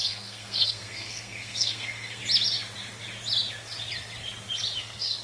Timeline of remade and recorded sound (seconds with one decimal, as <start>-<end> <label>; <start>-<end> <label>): 0.0-2.2 remade; 2.2-4.8 recorded; 4.8-5.2 remade